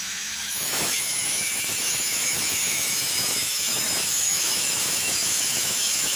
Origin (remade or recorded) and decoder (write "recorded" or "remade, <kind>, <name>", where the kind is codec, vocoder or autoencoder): remade, autoencoder, DAC-VAE